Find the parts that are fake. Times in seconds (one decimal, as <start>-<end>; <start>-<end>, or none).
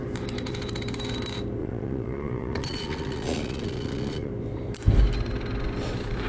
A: 1.6-4.3